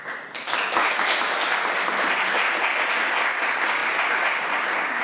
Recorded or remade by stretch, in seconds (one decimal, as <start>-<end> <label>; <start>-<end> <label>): 0.0-5.0 recorded